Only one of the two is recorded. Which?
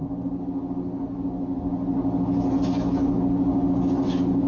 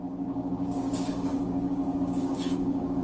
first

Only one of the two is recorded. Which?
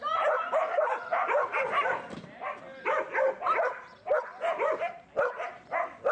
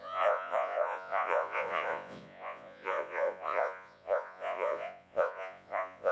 first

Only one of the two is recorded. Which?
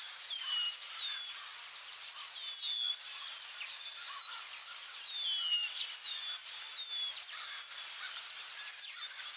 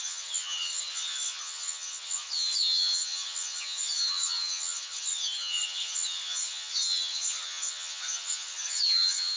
first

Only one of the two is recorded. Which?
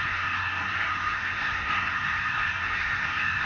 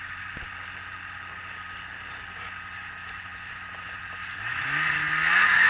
second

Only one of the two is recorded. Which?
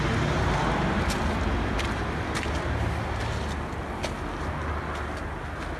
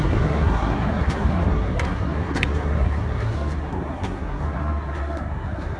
first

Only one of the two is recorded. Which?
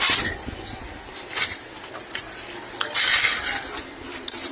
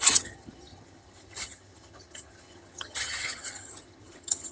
first